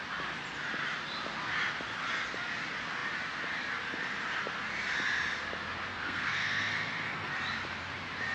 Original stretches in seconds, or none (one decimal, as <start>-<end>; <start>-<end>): 0.0-5.9; 7.3-8.3